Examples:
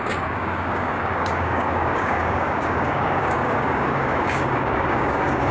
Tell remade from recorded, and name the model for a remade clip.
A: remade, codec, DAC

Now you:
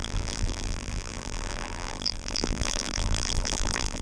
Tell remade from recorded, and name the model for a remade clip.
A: remade, vocoder, BigVGAN v2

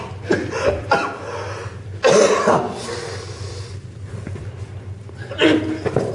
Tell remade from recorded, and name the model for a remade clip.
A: recorded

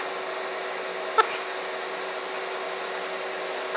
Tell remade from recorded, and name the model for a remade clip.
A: recorded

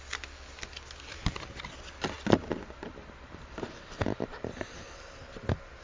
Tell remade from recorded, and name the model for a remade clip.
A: recorded